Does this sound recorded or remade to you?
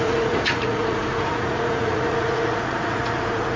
remade